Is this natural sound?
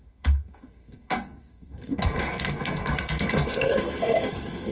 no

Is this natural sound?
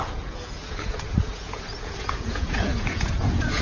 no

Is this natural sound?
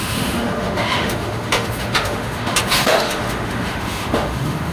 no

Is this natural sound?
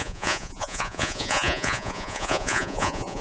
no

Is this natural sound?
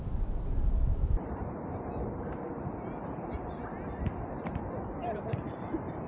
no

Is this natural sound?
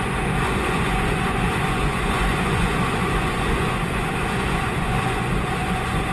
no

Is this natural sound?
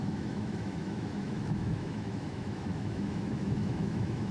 no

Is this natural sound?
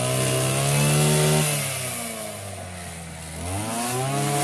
yes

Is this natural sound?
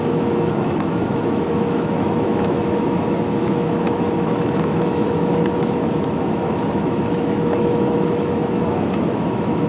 no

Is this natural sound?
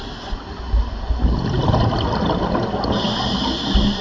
yes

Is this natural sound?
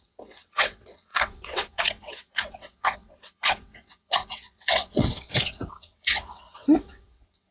no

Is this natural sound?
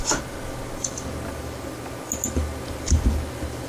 yes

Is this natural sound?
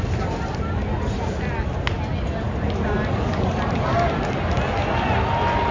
yes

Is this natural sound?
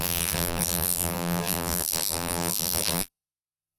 no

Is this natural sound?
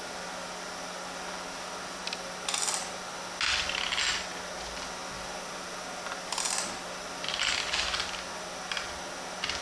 yes